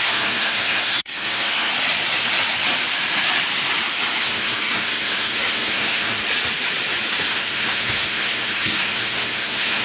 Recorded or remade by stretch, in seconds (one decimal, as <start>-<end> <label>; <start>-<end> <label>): 0.0-1.7 remade; 1.7-4.2 recorded; 4.2-6.2 remade; 6.2-7.3 recorded; 7.3-9.8 remade